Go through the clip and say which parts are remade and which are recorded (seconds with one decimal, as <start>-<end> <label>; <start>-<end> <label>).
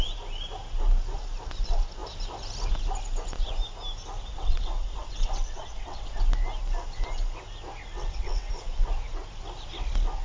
0.0-4.3 recorded; 4.3-6.2 remade; 6.2-7.8 recorded; 7.8-8.5 remade; 8.5-10.2 recorded